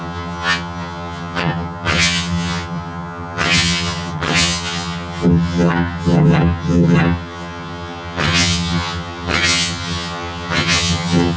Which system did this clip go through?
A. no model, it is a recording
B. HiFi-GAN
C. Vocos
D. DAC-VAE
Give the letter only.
B